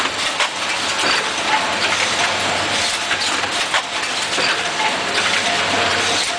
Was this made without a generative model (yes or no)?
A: yes